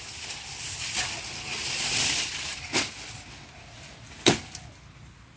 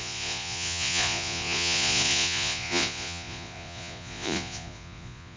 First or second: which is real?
first